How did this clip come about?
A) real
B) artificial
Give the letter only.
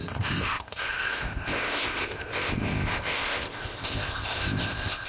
B